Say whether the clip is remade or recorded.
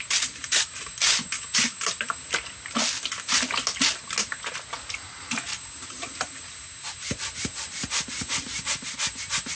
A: recorded